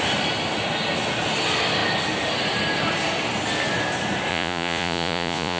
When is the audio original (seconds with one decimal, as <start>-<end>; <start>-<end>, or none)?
0.0-4.3